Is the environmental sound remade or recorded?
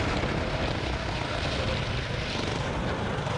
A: recorded